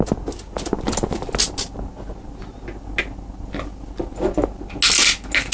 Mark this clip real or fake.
real